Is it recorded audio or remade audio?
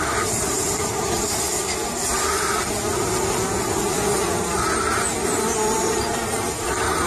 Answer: recorded